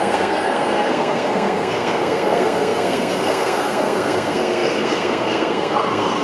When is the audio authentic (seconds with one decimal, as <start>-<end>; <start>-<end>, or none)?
none